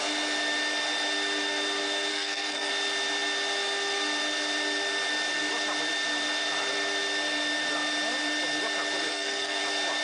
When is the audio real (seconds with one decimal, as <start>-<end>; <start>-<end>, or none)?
0.0-2.1; 2.7-9.1; 9.6-10.0